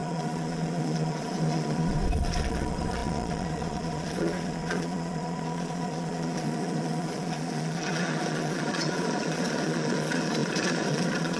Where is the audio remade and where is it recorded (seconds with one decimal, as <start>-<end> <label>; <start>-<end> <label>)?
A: 0.0-11.4 remade